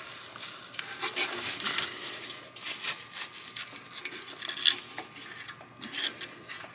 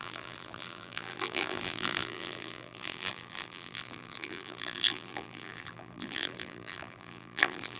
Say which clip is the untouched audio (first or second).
first